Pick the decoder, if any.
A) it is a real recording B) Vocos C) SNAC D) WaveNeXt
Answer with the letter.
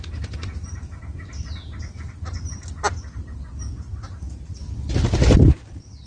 A